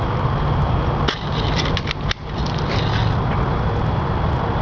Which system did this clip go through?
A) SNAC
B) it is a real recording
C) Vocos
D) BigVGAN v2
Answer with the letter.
B